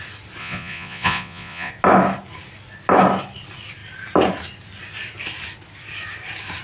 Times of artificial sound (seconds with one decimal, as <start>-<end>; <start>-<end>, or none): 0.4-1.7